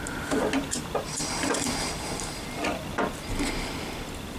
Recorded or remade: recorded